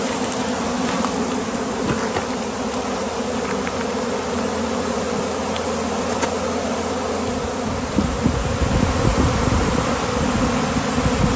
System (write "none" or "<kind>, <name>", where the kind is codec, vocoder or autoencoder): none